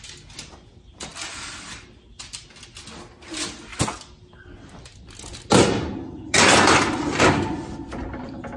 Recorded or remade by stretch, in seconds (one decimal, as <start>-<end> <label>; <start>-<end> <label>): 0.0-8.6 recorded

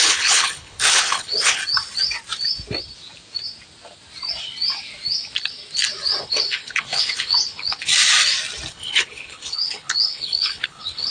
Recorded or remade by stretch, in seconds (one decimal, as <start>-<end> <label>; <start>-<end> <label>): 0.0-1.6 remade; 1.6-6.2 recorded; 6.2-7.9 remade; 7.9-8.7 recorded; 8.7-11.1 remade

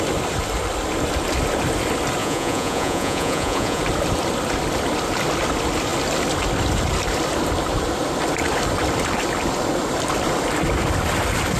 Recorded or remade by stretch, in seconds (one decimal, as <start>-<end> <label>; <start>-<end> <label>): 0.0-2.2 recorded; 2.2-3.8 remade; 3.8-11.6 recorded

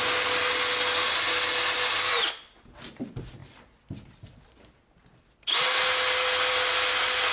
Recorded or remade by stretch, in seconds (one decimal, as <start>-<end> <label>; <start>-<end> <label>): 0.0-7.3 recorded

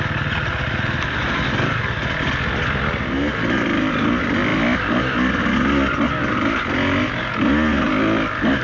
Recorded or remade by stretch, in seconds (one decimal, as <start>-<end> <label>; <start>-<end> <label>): 0.0-8.6 recorded

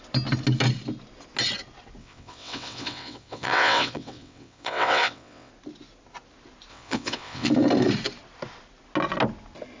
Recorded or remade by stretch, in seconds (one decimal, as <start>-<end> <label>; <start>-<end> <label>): 0.0-2.0 recorded; 2.0-5.5 remade; 5.5-6.7 recorded; 6.7-7.5 remade; 7.5-9.8 recorded

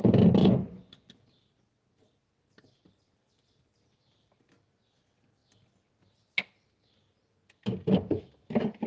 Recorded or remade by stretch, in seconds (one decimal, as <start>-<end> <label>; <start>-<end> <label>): 0.0-0.4 recorded; 0.4-1.1 remade; 1.1-8.9 recorded

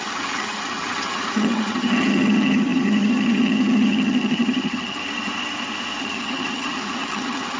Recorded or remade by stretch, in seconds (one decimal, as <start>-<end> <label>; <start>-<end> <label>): 0.0-5.0 remade; 5.0-6.0 recorded; 6.0-7.6 remade